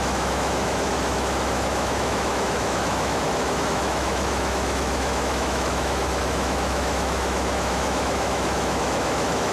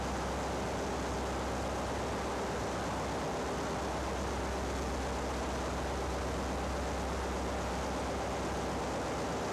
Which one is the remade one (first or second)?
first